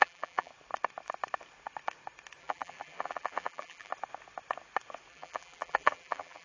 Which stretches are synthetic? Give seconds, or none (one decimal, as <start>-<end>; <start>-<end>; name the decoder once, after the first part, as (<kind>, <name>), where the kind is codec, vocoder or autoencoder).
0.0-0.5 (vocoder, BigVGAN v2); 2.4-3.9; 5.1-6.4